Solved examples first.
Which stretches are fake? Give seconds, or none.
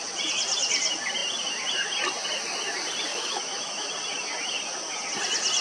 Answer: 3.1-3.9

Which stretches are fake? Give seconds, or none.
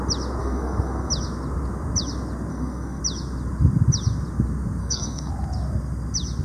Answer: 0.4-1.1; 2.5-3.0; 4.8-5.3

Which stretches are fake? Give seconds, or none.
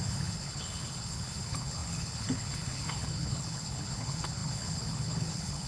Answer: 0.0-5.7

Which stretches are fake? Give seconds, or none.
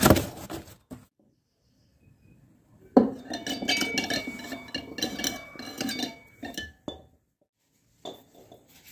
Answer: none